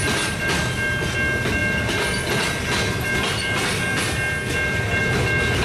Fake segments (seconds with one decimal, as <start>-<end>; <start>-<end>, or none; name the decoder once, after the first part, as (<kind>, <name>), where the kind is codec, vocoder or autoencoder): none